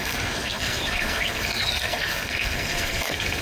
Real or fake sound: fake